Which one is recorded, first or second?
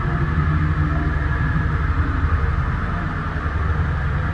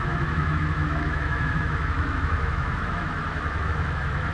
first